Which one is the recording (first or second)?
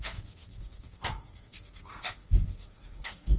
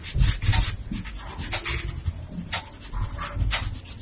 second